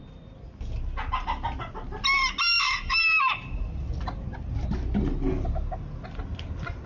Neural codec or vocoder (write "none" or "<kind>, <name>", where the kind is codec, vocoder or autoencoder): none